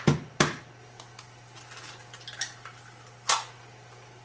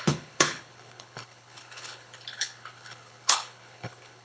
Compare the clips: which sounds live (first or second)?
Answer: first